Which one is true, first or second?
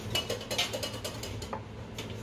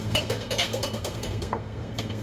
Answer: first